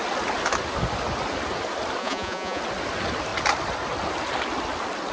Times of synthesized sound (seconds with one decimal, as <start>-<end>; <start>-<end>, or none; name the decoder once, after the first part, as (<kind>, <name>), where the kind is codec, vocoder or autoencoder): 2.0-2.6 (vocoder, Vocos)